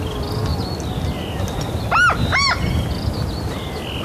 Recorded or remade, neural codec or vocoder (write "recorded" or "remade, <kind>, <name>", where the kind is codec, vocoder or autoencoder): recorded